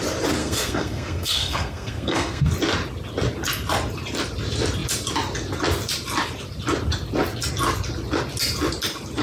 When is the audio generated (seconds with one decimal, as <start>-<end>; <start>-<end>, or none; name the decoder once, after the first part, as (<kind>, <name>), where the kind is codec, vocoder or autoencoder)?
0.4-2.5 (codec, SNAC)